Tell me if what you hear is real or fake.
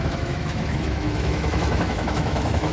fake